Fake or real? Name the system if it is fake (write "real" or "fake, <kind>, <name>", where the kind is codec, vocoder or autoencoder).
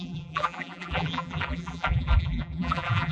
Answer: fake, vocoder, BigVGAN v2